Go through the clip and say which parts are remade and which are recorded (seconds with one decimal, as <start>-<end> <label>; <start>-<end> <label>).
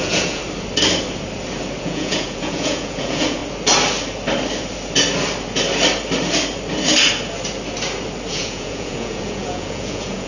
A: 0.0-0.4 remade; 0.4-1.8 recorded; 1.8-3.4 remade; 3.4-8.3 recorded; 8.3-10.3 remade